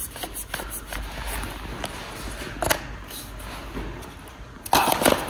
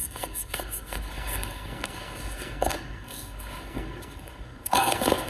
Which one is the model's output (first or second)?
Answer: second